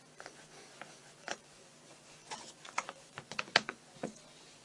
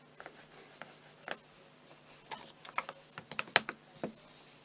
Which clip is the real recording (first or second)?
second